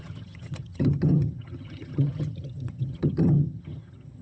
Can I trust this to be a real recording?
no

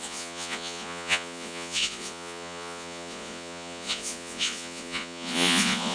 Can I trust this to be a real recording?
no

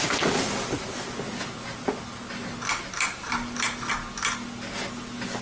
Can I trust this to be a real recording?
yes